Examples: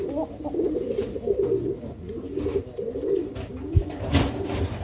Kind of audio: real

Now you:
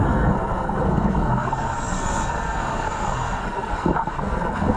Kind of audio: fake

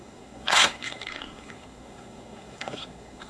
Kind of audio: fake